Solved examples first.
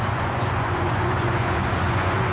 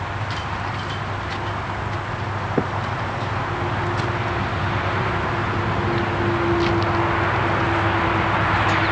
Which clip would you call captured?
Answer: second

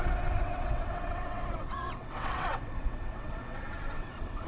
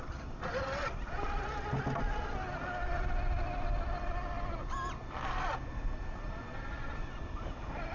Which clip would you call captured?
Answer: second